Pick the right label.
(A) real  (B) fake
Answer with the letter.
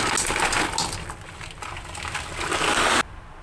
A